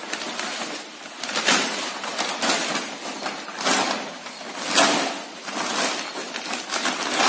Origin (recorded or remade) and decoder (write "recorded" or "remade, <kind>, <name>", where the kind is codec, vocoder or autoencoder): recorded